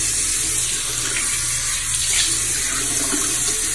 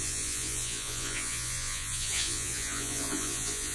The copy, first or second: second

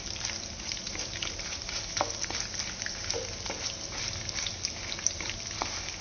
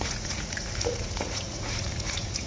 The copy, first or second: second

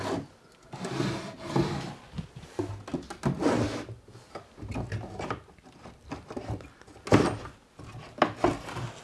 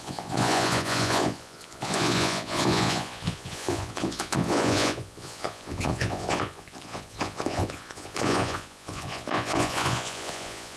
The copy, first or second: second